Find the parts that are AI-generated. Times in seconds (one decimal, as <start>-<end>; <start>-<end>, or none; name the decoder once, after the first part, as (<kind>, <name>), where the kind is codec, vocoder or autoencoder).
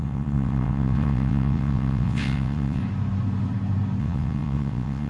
0.0-2.8 (vocoder, WaveNeXt); 4.0-5.1